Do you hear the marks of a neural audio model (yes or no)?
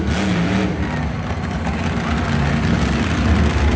no